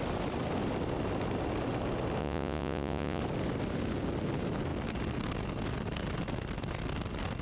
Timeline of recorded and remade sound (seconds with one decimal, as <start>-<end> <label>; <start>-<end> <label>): 0.0-2.2 recorded; 2.2-3.2 remade; 3.2-7.4 recorded